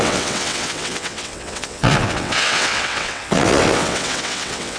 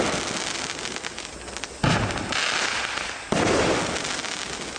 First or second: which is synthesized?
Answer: first